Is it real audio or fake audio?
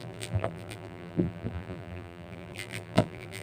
fake